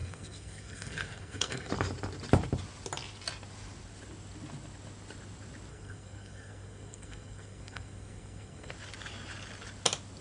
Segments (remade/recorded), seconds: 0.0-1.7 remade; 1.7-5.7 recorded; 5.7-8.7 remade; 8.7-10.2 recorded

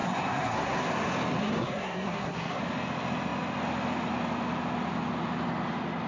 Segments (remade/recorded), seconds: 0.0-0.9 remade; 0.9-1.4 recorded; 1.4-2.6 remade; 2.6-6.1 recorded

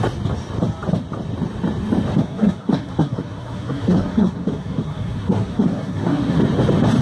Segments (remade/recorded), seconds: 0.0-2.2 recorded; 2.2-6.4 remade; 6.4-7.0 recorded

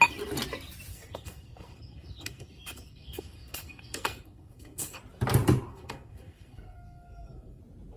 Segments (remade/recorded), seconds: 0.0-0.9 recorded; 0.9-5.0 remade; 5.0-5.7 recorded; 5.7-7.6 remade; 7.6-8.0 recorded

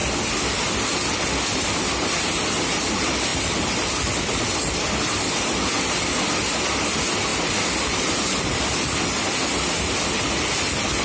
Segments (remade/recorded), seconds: 0.0-11.0 recorded

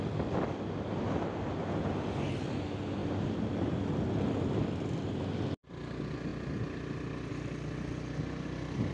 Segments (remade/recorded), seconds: 0.0-8.9 recorded

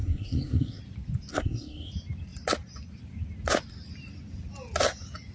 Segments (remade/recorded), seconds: 0.0-0.8 remade; 0.8-1.3 recorded; 1.3-1.9 remade; 1.9-5.3 recorded